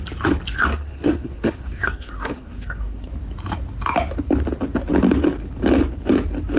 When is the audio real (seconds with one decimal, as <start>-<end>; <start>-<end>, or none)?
0.0-0.7; 3.1-6.6